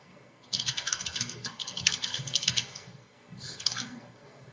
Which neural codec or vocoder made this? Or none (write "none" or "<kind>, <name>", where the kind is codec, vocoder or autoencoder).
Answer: codec, SNAC